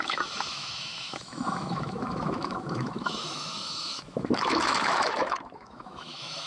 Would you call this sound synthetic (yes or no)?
yes